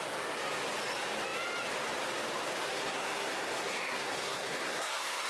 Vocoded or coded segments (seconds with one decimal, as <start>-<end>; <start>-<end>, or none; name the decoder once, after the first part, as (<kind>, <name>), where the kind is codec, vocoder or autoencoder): 2.7-5.3 (codec, SNAC)